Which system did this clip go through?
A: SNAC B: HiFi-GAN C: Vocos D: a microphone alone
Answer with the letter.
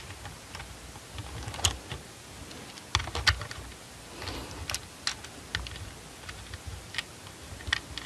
D